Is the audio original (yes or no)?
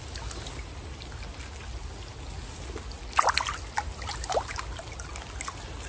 yes